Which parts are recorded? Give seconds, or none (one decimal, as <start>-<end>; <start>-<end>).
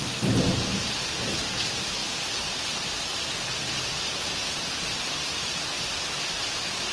0.0-6.9